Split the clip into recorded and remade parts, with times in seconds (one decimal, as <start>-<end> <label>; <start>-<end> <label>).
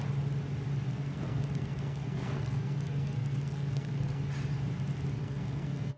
0.0-0.9 recorded; 0.9-4.2 remade; 4.2-5.2 recorded; 5.2-6.0 remade